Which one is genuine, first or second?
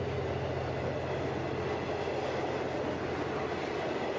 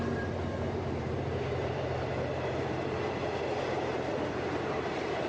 first